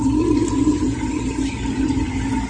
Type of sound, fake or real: real